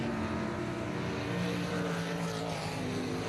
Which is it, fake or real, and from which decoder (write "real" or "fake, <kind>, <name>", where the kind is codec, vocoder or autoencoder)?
real